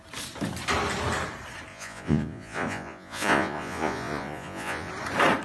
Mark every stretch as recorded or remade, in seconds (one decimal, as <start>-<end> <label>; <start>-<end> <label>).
0.0-1.7 recorded; 1.7-4.9 remade; 4.9-5.4 recorded